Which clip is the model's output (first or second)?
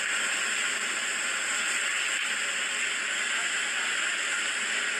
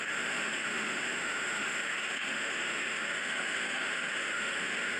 second